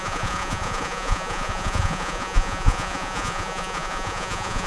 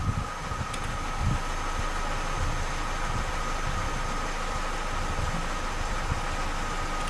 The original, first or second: second